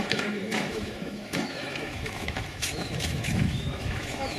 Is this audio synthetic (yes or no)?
yes